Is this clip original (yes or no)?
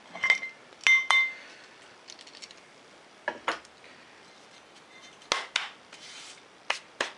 yes